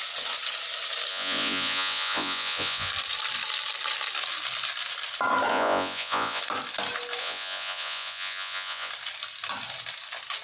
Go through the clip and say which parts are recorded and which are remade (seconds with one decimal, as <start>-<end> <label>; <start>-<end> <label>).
0.0-1.1 recorded; 1.1-2.9 remade; 2.9-5.5 recorded; 5.5-6.4 remade; 6.4-7.2 recorded; 7.2-8.9 remade; 8.9-10.4 recorded